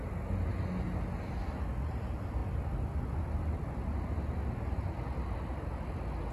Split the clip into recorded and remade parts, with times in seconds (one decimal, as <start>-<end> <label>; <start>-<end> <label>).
0.0-6.3 recorded